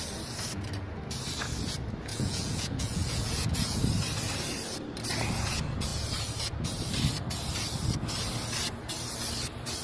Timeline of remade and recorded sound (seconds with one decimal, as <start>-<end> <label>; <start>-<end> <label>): 0.0-2.1 recorded; 2.1-3.8 remade; 3.8-9.8 recorded